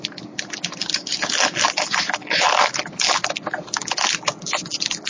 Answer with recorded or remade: recorded